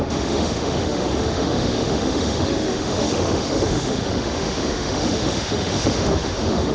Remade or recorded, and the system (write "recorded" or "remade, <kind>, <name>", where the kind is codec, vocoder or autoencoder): remade, autoencoder, DAC-VAE